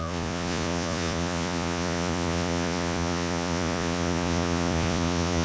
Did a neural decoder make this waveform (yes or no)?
yes